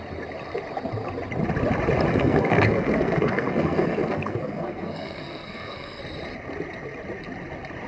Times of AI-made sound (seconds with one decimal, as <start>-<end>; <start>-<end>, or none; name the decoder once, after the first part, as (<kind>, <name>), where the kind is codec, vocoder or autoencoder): 2.1-6.0 (codec, SNAC)